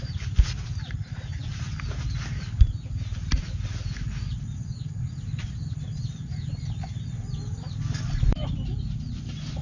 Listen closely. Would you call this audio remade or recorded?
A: recorded